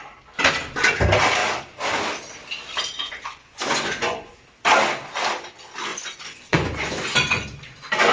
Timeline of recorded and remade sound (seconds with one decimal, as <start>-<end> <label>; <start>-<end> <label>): 0.0-3.0 recorded; 3.0-4.3 remade; 4.3-5.9 recorded; 5.9-8.1 remade